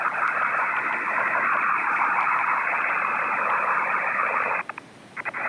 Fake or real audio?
real